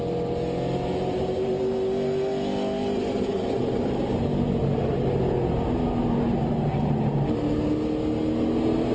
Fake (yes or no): no